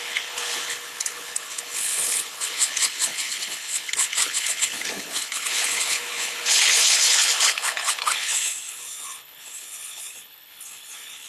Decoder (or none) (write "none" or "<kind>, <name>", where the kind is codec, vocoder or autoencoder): codec, HILCodec